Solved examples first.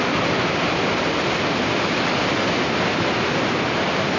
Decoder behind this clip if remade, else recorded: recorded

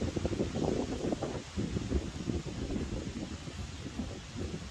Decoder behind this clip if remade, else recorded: recorded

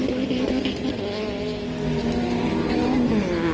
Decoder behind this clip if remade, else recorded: recorded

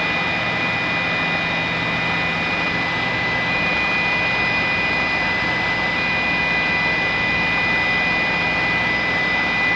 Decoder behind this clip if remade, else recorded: recorded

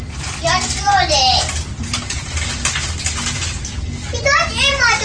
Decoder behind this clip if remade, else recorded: recorded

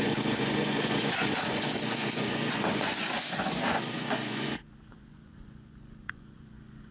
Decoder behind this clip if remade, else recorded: remade, vocoder, Vocos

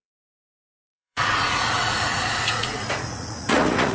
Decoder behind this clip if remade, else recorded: remade, vocoder, Vocos